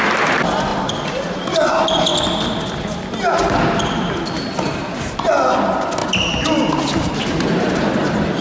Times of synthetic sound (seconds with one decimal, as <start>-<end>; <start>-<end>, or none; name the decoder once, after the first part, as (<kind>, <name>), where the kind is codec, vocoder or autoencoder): none

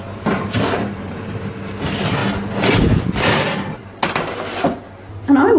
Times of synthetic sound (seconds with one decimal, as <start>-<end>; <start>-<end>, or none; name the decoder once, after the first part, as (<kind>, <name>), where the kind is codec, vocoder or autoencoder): 0.0-2.2 (vocoder, BigVGAN v2); 2.9-3.8

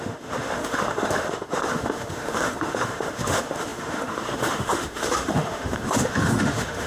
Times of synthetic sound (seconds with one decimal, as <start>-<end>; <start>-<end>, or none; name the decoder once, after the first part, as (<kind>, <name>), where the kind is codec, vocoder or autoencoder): 0.0-6.9 (autoencoder, DAC-VAE)

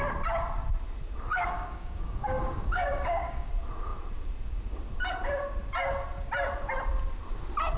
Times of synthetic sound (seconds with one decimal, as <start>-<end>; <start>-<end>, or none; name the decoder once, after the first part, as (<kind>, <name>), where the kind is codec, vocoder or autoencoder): 1.3-3.5 (codec, DAC)

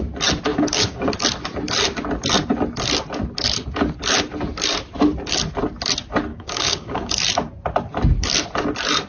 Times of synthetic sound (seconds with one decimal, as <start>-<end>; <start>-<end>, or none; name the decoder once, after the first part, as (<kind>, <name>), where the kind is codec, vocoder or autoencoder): 0.5-1.1 (codec, DAC); 6.3-7.1

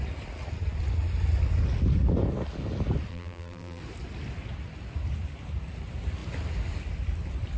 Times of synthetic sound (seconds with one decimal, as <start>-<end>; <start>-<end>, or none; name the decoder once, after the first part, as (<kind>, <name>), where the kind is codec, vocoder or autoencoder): 3.1-3.8 (vocoder, BigVGAN v2)

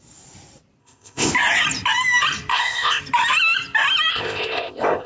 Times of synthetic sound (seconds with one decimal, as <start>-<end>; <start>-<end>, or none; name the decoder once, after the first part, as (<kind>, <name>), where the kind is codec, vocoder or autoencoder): 0.8-1.3 (codec, ZipCodec); 2.5-3.0; 4.1-5.1